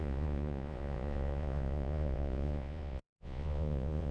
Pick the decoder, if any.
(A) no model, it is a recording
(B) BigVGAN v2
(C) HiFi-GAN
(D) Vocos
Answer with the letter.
D